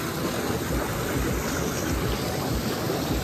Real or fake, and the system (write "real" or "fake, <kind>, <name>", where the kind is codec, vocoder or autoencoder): real